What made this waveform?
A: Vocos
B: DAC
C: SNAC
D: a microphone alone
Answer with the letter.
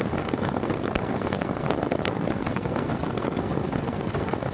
C